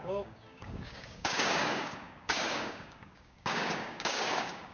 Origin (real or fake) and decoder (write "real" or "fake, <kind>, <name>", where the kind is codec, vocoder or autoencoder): fake, codec, DAC